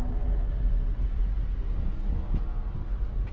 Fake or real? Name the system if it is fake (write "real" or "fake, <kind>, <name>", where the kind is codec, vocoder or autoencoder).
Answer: real